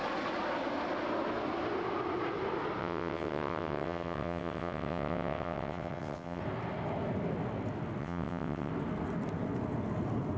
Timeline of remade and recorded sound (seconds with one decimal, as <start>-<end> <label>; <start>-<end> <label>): 0.0-2.8 recorded; 2.8-6.4 remade; 6.4-8.0 recorded; 8.0-8.7 remade; 8.7-10.4 recorded